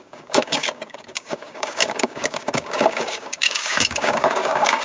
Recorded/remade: remade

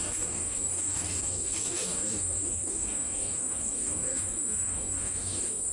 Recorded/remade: remade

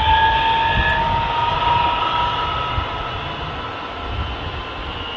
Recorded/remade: recorded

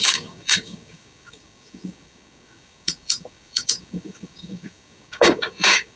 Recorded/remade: remade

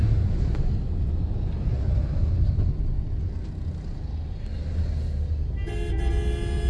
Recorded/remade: recorded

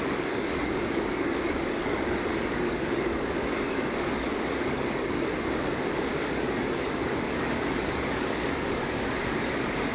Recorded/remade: remade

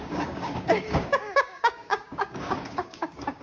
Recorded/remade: remade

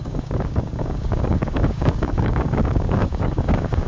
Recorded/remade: remade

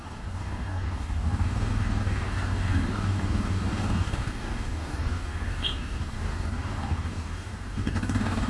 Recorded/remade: remade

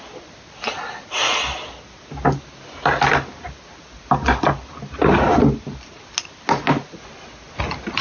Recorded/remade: recorded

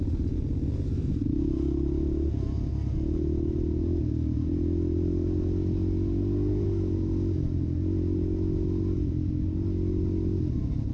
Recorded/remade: recorded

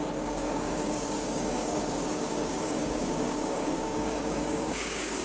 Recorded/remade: remade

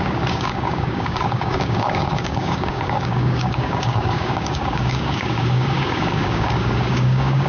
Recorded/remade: remade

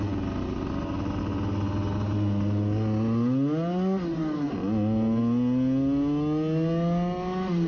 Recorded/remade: recorded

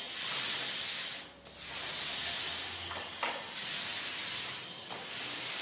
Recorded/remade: recorded